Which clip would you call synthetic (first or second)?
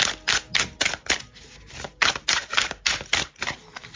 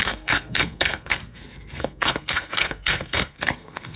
second